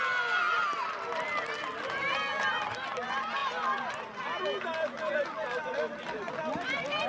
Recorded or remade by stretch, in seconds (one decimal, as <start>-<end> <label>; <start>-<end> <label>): 0.0-7.1 recorded